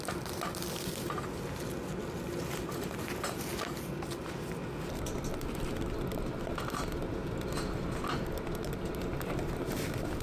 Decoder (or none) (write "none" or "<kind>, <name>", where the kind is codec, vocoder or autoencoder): none